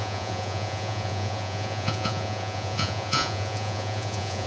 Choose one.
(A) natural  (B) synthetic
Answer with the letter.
B